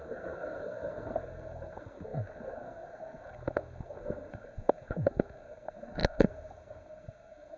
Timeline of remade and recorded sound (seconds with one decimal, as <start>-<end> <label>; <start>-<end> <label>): 0.0-7.6 remade